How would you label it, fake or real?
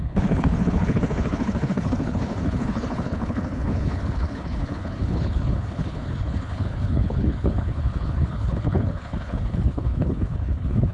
fake